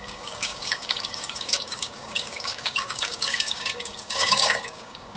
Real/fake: fake